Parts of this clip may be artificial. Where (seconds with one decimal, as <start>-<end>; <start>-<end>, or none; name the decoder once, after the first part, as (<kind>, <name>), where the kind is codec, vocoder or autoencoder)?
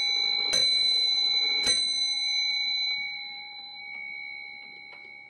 0.6-3.8 (vocoder, Vocos)